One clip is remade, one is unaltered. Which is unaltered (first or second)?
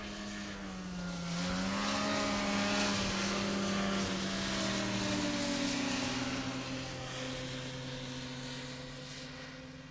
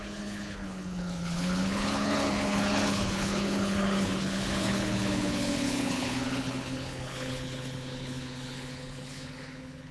first